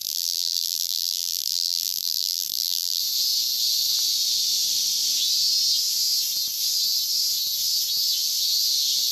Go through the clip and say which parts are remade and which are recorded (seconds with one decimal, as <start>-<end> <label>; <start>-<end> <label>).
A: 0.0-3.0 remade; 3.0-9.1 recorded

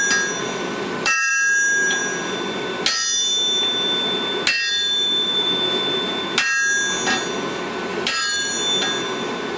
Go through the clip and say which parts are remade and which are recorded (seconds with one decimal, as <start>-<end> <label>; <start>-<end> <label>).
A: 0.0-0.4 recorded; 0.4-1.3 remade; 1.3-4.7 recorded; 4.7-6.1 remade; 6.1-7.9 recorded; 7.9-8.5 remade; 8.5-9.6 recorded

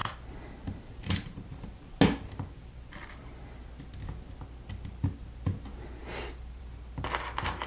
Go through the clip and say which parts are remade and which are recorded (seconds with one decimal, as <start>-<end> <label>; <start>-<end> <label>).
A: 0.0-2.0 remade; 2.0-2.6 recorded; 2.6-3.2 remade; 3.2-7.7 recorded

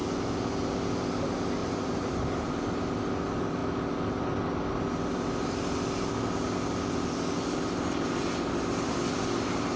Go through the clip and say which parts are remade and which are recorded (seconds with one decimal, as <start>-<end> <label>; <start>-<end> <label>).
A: 0.0-1.6 recorded; 1.6-2.5 remade; 2.5-9.8 recorded